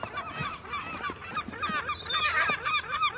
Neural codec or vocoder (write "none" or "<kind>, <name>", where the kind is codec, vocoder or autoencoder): none